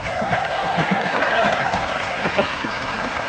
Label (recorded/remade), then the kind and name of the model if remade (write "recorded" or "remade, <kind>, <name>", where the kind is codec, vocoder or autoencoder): remade, codec, SNAC